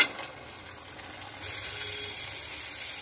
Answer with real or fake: real